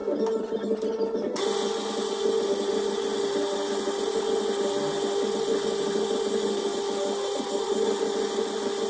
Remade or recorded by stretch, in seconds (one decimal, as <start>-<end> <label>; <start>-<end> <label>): 0.0-8.9 recorded